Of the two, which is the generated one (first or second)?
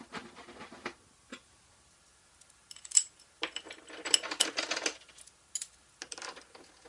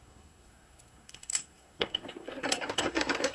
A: second